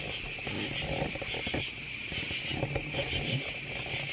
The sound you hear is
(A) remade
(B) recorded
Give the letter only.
B